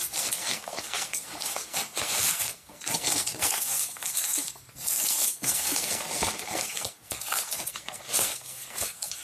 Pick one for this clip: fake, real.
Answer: fake